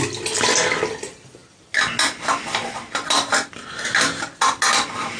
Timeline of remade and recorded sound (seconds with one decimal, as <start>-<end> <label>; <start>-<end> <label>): 0.0-5.2 recorded